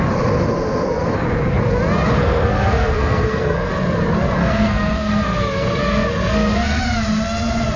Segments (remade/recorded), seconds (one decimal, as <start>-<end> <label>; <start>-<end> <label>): 0.0-2.2 recorded; 2.2-3.7 remade; 3.7-4.4 recorded; 4.4-6.8 remade; 6.8-7.8 recorded